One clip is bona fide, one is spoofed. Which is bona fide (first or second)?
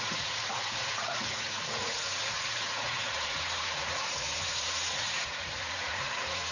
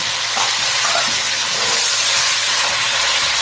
second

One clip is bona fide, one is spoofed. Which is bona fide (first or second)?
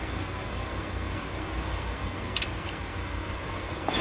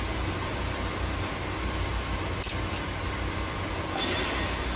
second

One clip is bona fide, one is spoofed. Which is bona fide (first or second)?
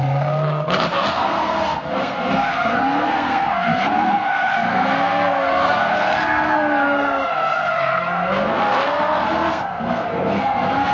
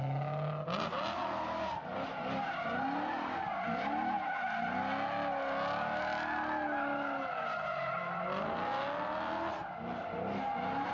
second